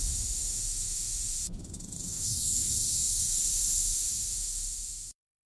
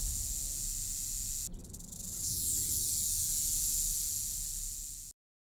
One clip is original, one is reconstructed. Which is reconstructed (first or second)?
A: first